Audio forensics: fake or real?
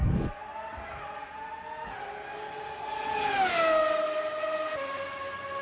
real